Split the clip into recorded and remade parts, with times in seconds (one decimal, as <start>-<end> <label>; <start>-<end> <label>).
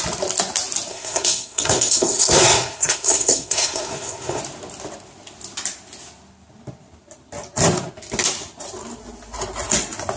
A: 0.0-0.9 recorded; 0.9-4.4 remade; 4.4-10.2 recorded